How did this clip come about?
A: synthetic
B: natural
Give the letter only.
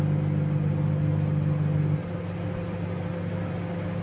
B